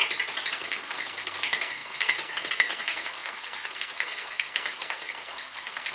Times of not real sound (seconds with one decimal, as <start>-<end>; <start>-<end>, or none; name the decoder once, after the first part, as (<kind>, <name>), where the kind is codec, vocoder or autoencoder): 0.5-5.9 (codec, SNAC)